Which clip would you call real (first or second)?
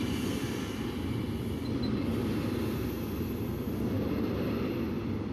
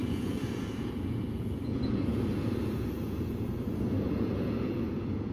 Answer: first